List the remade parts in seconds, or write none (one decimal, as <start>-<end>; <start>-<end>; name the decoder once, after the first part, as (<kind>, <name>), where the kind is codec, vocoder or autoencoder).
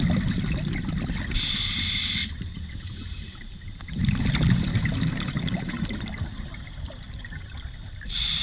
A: 2.2-6.6 (vocoder, BigVGAN v2)